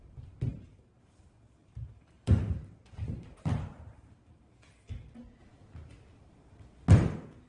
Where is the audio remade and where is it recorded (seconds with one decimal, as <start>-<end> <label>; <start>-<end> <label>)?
0.0-0.5 recorded; 0.5-1.0 remade; 1.0-1.6 recorded; 1.6-4.4 remade; 4.4-7.5 recorded